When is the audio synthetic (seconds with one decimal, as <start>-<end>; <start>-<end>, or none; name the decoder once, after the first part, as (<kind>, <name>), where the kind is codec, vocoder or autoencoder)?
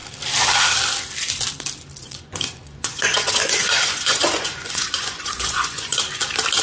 2.0-6.0 (vocoder, Vocos)